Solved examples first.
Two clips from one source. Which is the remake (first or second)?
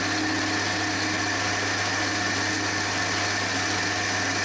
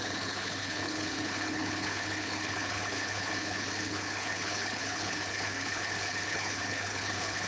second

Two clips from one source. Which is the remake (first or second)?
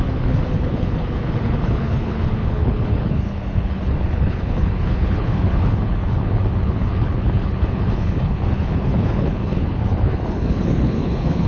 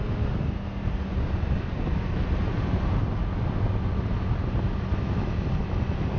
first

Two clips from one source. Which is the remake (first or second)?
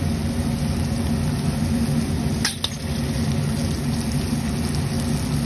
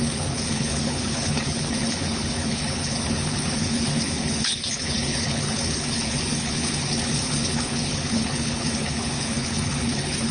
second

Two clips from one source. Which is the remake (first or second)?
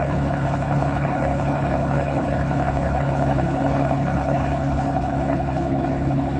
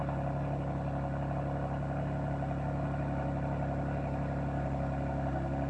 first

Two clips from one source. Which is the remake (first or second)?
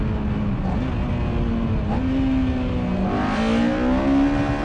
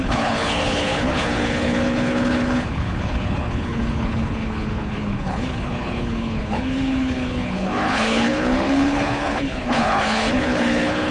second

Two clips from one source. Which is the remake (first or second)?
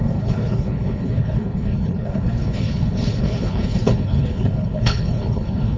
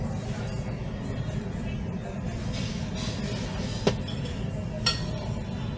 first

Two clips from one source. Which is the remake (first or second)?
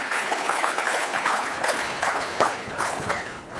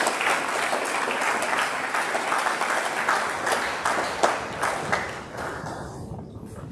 first